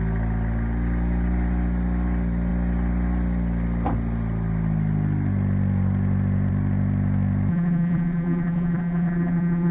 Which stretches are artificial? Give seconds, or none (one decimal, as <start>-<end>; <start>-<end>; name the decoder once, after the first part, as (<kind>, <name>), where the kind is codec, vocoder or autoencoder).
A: 7.5-9.7 (vocoder, BigVGAN v2)